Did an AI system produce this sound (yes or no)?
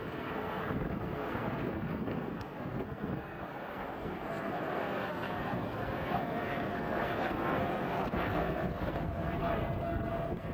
yes